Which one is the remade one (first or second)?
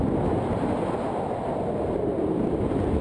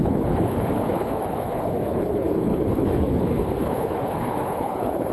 second